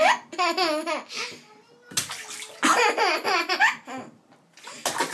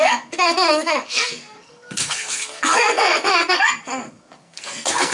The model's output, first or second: second